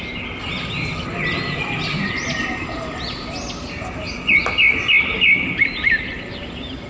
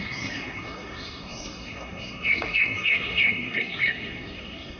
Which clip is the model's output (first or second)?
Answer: second